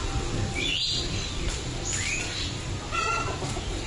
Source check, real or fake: real